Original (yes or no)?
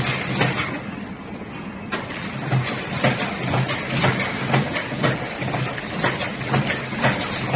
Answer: yes